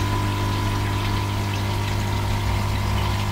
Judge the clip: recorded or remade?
recorded